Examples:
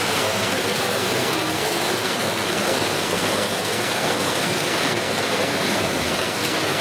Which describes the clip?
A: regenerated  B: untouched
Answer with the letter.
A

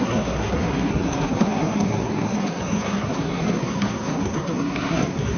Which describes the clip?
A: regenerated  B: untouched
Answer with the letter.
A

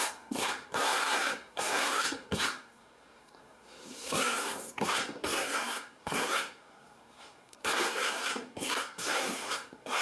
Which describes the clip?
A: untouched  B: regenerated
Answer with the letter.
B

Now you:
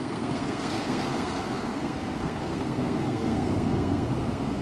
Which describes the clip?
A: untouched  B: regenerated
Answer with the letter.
B